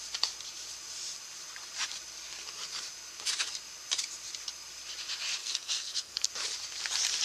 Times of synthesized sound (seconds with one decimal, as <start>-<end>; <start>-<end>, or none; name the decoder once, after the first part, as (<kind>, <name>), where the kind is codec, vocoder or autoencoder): 5.4-6.3 (codec, SNAC)